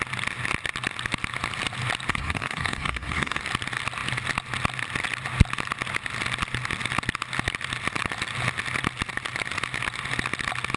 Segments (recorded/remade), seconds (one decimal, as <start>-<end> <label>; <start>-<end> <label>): 0.0-2.1 recorded; 2.1-3.4 remade; 3.4-10.8 recorded